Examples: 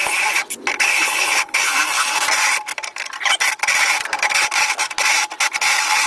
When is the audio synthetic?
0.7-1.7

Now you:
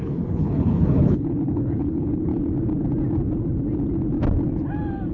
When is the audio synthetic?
0.0-2.3